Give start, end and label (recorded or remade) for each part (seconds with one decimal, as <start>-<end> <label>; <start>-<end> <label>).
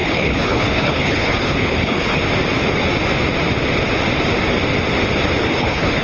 0.0-2.2 remade; 2.2-5.4 recorded; 5.4-6.0 remade